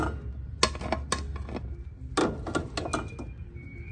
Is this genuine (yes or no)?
yes